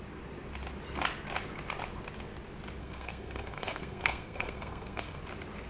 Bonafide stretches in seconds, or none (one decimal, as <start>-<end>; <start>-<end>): 0.0-2.8; 5.2-5.7